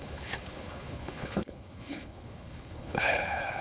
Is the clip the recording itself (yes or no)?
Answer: no